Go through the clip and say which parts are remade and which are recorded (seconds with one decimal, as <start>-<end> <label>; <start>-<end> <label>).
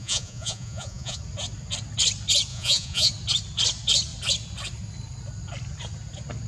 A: 0.0-1.2 remade; 1.2-2.5 recorded; 2.5-3.1 remade; 3.1-6.5 recorded